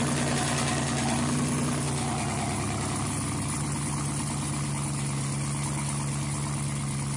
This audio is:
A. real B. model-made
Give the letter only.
A